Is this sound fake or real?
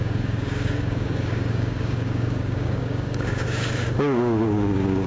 fake